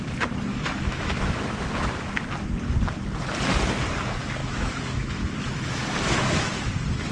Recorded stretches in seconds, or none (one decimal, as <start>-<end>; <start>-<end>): 0.0-0.5; 2.1-4.4